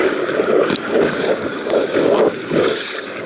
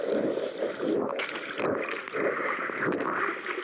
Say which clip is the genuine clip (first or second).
second